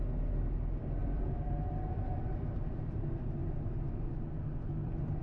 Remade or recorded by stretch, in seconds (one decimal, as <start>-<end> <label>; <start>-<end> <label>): 0.0-1.0 recorded; 1.0-3.7 remade; 3.7-5.2 recorded